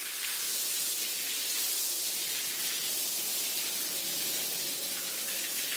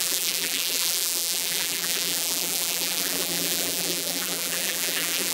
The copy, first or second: second